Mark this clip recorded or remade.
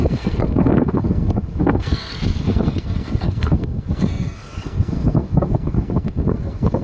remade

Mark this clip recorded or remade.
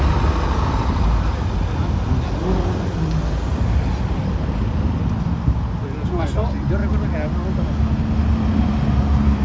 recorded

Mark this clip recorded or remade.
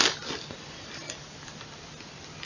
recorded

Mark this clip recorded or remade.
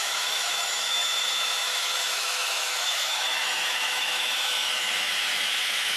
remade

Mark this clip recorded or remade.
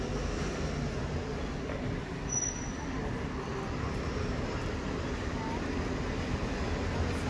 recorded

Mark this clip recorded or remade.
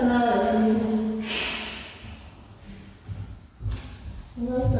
recorded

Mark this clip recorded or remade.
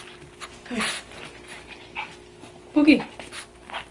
recorded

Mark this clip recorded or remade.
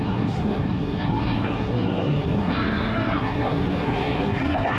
remade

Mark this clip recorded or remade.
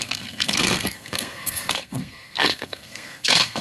remade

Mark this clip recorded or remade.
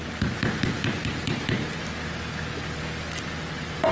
recorded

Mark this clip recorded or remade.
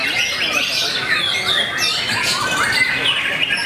recorded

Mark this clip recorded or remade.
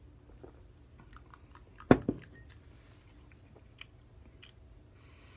recorded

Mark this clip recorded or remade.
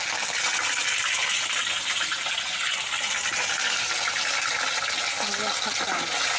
recorded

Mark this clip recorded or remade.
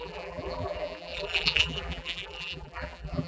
remade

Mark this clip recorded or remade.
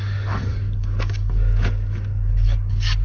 remade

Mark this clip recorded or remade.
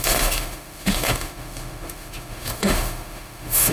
remade